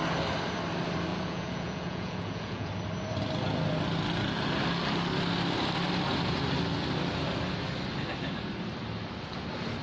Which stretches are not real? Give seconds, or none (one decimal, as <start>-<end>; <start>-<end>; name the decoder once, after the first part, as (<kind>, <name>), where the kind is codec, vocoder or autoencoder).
1.1-2.7 (vocoder, Vocos)